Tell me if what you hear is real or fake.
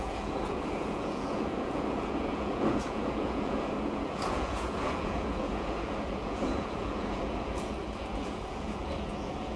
fake